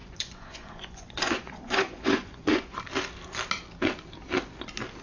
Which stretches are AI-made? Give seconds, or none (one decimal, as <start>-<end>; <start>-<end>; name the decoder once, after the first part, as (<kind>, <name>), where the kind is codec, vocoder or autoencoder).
0.0-2.8 (vocoder, Vocos)